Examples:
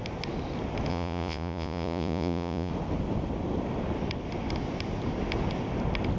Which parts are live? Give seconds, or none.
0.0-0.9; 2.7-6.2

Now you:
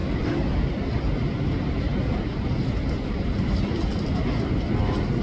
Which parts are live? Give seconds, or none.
0.0-5.2

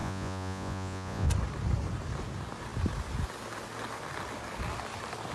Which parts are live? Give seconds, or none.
1.3-5.3

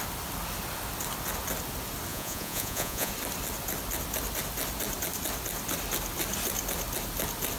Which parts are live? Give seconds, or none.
0.0-2.1; 3.1-7.6

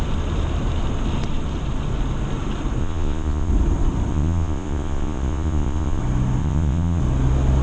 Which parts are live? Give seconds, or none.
0.0-2.8; 3.5-4.1; 6.0-6.4; 7.0-7.6